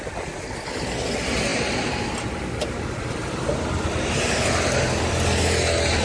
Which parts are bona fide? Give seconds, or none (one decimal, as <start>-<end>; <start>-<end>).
0.0-6.0